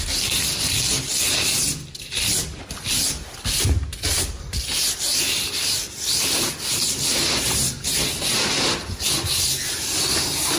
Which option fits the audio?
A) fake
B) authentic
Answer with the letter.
B